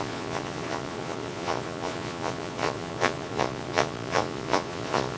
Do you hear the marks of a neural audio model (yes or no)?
yes